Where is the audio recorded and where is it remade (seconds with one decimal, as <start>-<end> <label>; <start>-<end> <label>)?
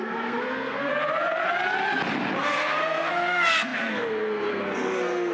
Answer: 0.0-0.9 remade; 0.9-2.4 recorded; 2.4-5.3 remade